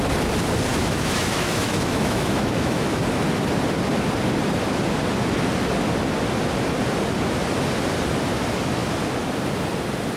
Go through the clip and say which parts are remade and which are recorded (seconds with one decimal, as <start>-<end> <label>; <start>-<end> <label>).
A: 0.0-0.7 recorded; 0.7-3.0 remade; 3.0-10.2 recorded

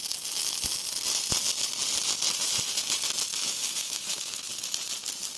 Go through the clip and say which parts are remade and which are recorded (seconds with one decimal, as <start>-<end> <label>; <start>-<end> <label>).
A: 0.0-3.3 recorded; 3.3-4.5 remade; 4.5-5.4 recorded

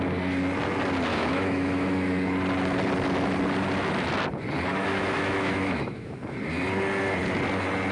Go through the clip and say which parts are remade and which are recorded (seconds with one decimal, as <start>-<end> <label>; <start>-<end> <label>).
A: 0.0-1.1 recorded; 1.1-2.1 remade; 2.1-4.7 recorded; 4.7-6.2 remade; 6.2-7.9 recorded

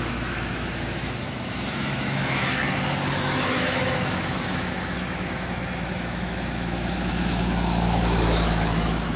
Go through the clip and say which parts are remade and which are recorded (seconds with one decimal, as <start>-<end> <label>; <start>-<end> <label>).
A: 0.0-2.6 remade; 2.6-3.1 recorded; 3.1-9.2 remade